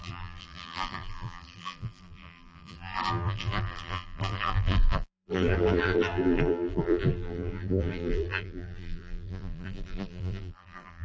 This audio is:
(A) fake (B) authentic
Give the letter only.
A